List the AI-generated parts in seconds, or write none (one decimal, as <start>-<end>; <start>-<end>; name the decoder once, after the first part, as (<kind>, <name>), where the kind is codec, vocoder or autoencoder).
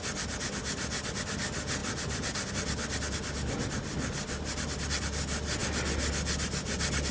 none